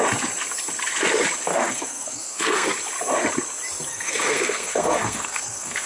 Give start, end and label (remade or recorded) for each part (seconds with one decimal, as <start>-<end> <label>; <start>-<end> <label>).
0.0-1.5 recorded; 1.5-2.7 remade; 2.7-3.9 recorded; 3.9-5.9 remade